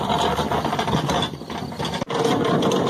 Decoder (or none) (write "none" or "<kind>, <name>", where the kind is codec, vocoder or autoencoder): none